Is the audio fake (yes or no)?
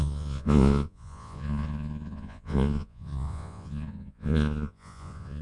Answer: yes